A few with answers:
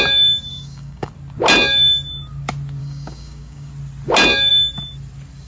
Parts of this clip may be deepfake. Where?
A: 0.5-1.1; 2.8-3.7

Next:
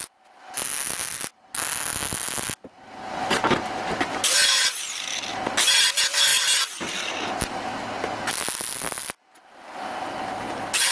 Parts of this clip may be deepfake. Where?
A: none

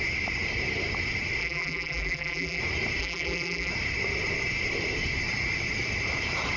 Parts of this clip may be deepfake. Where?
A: 1.4-2.6; 3.0-3.7

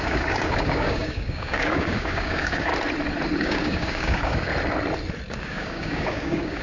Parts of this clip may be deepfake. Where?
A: 0.0-2.7; 3.4-4.5; 5.3-6.6